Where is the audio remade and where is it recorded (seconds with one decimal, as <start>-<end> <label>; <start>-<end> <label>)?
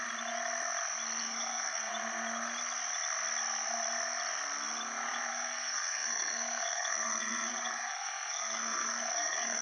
0.0-1.2 recorded; 1.2-1.9 remade; 1.9-5.3 recorded; 5.3-9.6 remade